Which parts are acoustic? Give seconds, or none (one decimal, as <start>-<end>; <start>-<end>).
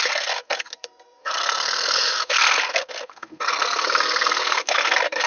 none